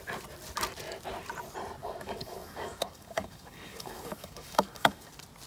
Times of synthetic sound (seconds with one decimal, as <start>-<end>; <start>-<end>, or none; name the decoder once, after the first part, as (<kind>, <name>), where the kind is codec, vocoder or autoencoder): 1.8-5.1 (codec, DAC)